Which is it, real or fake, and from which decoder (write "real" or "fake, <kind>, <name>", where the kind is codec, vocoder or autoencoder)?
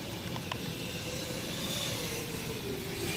real